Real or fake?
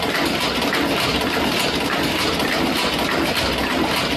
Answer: real